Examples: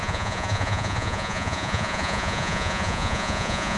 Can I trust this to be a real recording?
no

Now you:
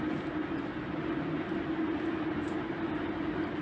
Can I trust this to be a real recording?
yes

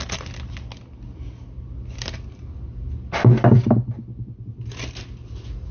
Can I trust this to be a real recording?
yes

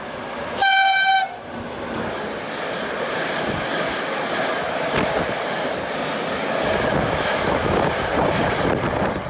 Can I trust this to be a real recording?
yes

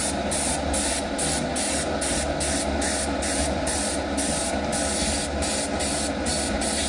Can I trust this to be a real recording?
yes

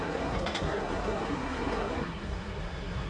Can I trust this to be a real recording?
no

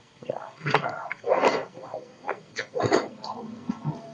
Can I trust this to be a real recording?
no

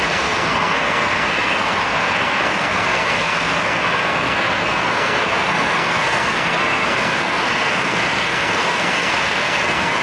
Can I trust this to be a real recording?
no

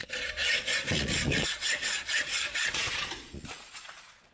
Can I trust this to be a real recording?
no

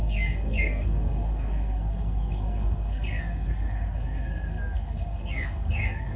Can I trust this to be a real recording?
no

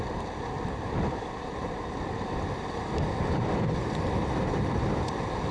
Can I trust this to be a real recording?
no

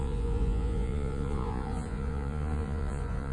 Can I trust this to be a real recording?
no